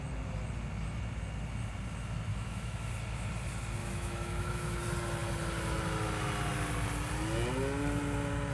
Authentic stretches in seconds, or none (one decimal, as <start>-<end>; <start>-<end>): 0.0-2.3; 2.9-3.8; 4.8-8.5